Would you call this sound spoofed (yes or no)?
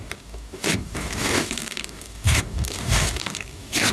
yes